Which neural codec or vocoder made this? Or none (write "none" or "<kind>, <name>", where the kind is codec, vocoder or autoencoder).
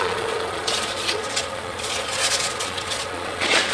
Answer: vocoder, Vocos